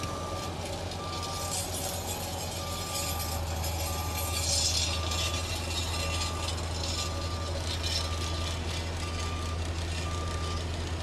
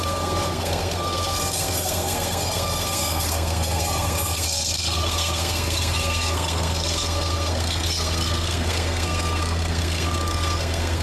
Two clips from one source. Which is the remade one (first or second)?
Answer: second